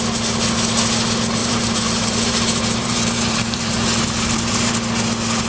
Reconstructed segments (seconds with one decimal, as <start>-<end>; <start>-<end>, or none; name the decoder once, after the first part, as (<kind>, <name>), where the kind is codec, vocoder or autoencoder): 1.4-4.7 (vocoder, BigVGAN v2)